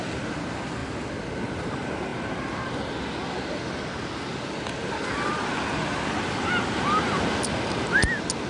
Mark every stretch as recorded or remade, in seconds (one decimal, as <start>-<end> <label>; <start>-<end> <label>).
0.0-8.5 recorded